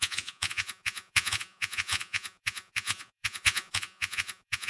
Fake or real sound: fake